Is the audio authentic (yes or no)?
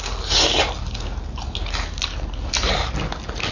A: yes